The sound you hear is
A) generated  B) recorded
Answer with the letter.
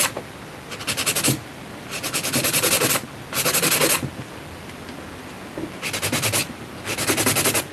B